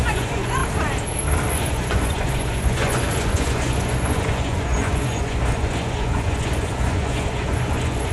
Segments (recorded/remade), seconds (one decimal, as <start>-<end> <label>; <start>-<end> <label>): 0.0-0.6 remade; 0.6-1.5 recorded; 1.5-8.1 remade